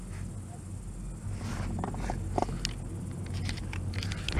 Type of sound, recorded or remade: recorded